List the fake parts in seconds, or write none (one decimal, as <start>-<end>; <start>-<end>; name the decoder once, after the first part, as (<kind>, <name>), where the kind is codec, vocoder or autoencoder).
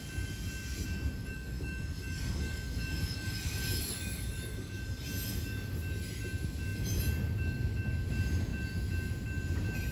1.2-4.8 (codec, DAC)